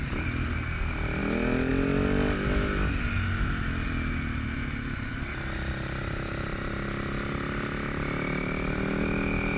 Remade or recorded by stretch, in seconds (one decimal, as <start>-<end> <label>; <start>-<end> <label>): 0.0-9.6 recorded